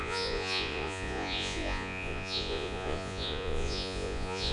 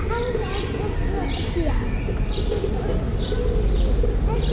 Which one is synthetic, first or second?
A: first